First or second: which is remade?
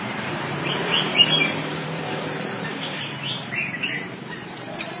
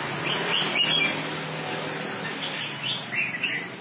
first